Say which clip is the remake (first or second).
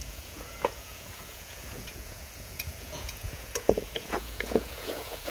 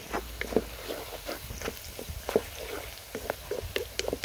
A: first